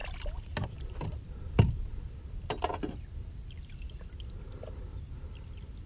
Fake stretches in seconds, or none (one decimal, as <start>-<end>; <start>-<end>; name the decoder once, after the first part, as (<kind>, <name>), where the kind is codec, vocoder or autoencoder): 0.0-2.0 (vocoder, BigVGAN v2)